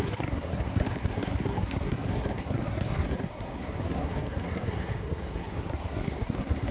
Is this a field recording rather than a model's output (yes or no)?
no